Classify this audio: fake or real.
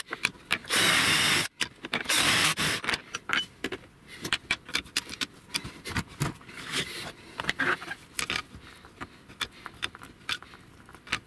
fake